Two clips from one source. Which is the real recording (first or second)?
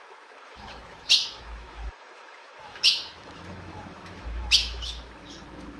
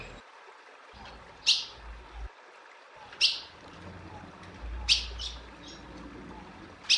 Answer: second